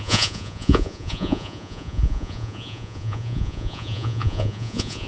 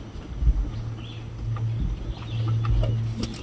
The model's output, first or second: first